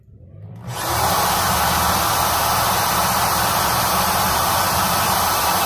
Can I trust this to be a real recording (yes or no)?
no